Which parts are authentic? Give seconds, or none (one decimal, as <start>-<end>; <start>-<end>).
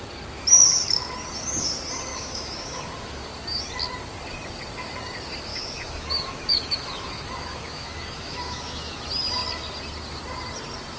0.0-2.1; 3.3-5.5; 9.0-11.0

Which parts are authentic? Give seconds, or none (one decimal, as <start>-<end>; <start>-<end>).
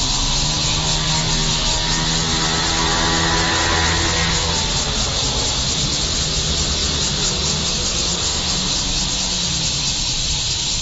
0.0-8.2; 8.7-10.8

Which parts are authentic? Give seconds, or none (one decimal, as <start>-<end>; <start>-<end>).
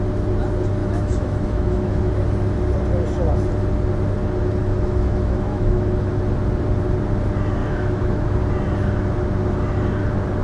0.0-0.8; 2.1-4.6; 6.1-7.6; 8.4-10.4